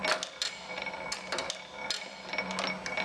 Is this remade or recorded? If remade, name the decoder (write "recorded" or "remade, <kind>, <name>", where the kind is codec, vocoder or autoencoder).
recorded